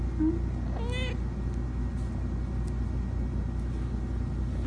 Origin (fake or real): real